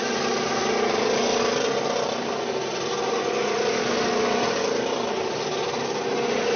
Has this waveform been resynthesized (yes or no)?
no